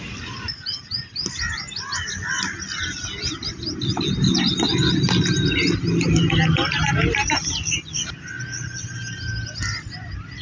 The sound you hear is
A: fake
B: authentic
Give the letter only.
B